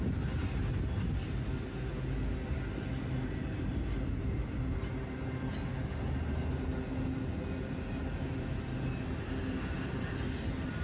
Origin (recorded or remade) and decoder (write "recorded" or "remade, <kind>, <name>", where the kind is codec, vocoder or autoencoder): recorded